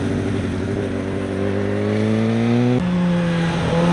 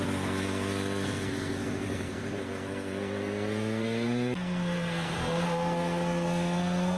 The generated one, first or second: second